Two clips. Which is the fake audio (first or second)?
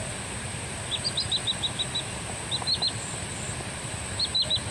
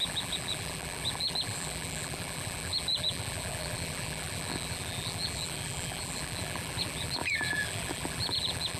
second